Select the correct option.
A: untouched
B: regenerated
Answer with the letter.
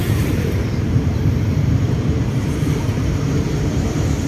B